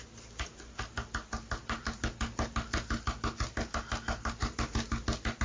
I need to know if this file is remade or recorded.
recorded